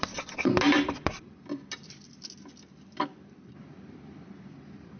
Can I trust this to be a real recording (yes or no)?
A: no